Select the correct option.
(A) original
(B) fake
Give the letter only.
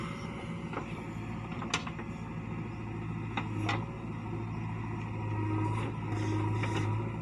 A